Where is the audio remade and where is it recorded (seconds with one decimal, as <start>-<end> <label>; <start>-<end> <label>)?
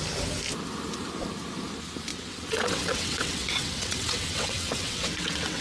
0.0-2.1 recorded; 2.1-5.6 remade